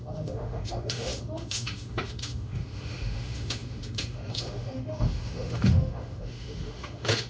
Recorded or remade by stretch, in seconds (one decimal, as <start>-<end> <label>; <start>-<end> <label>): 0.0-7.3 remade